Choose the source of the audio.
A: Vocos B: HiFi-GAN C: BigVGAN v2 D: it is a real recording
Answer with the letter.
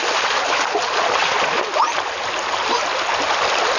D